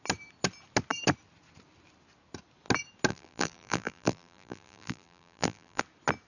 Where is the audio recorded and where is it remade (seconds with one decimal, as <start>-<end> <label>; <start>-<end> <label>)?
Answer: 0.0-3.1 recorded; 3.1-5.8 remade; 5.8-6.3 recorded